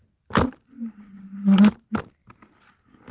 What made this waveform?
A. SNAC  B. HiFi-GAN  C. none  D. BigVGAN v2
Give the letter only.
C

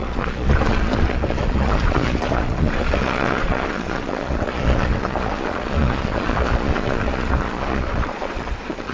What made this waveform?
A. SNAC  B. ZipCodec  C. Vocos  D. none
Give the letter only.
C